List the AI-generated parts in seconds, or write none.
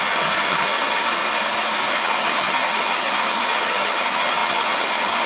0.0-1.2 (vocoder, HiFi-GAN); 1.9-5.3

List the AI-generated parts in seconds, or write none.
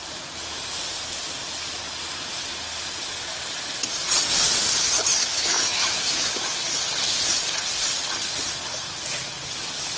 5.3-6.6 (autoencoder, DAC-VAE)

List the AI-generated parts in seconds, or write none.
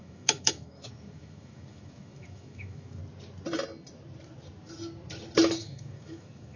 0.0-3.0 (autoencoder, DAC-VAE); 5.6-6.6